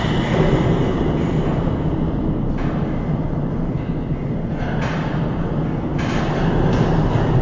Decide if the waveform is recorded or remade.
recorded